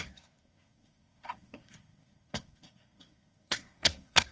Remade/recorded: remade